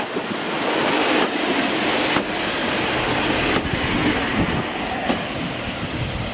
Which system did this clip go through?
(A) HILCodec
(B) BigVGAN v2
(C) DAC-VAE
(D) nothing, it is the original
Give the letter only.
D